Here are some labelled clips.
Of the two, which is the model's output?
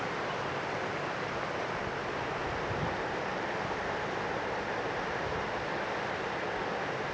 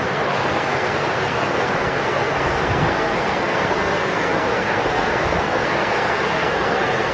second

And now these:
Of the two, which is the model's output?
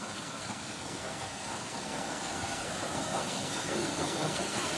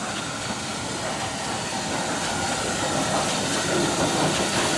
first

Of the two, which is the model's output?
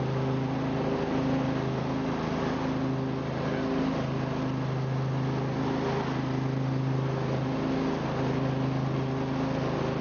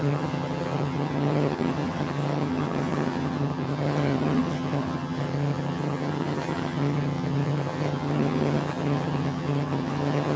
second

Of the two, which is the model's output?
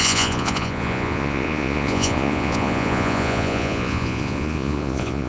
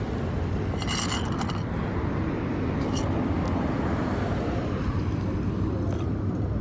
first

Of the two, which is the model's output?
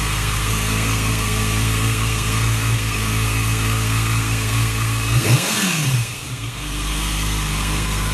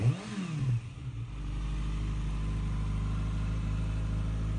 first